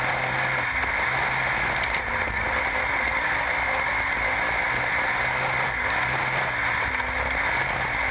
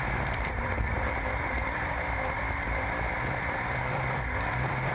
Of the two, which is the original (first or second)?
first